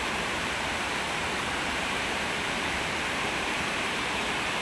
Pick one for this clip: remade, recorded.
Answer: remade